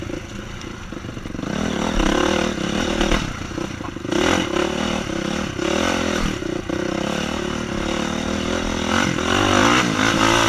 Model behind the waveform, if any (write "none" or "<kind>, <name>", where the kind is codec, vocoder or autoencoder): none